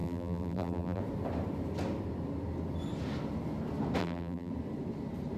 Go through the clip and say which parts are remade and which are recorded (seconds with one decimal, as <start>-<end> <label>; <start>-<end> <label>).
0.0-1.0 remade; 1.0-4.0 recorded; 4.0-4.5 remade; 4.5-5.4 recorded

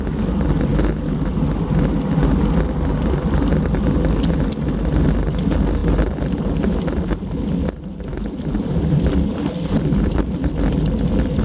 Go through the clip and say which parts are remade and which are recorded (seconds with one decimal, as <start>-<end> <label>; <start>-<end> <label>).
0.0-8.1 recorded; 8.1-10.5 remade; 10.5-11.4 recorded

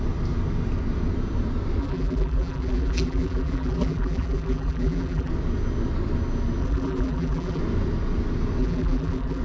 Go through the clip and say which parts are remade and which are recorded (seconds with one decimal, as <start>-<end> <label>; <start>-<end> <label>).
0.0-1.8 recorded; 1.8-5.3 remade; 5.3-6.6 recorded; 6.6-7.6 remade; 7.6-8.6 recorded; 8.6-9.4 remade

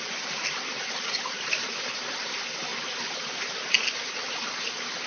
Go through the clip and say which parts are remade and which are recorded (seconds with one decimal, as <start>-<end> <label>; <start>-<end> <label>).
0.0-0.7 recorded; 0.7-1.7 remade; 1.7-5.1 recorded

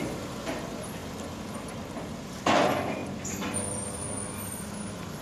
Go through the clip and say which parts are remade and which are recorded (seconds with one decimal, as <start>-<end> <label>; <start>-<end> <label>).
0.0-5.2 recorded

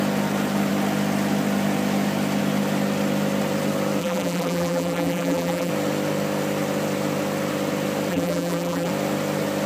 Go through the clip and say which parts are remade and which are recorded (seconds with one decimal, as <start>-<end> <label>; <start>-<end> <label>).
0.0-4.0 recorded; 4.0-5.7 remade; 5.7-8.1 recorded; 8.1-8.9 remade; 8.9-9.7 recorded

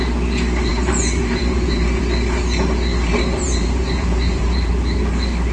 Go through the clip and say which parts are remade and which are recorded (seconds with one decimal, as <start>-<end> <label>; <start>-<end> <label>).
0.0-0.7 recorded; 0.7-2.0 remade; 2.0-2.9 recorded; 2.9-4.7 remade; 4.7-5.5 recorded